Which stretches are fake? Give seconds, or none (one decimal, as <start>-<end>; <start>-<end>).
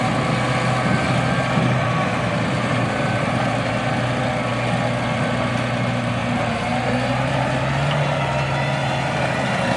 2.1-3.7; 6.2-7.5